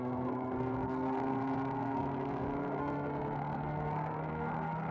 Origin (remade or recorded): remade